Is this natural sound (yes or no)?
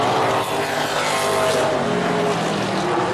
yes